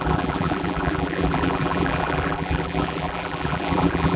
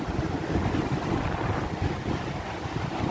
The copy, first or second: first